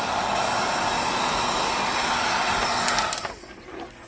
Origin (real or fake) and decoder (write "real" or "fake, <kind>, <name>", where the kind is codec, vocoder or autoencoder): real